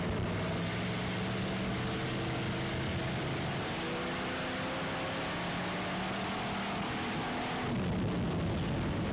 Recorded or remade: recorded